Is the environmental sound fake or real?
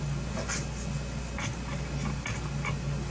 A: real